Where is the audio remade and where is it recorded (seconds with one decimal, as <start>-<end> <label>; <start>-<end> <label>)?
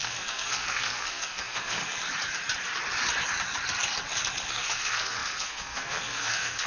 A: 0.0-1.8 remade; 1.8-4.5 recorded; 4.5-6.7 remade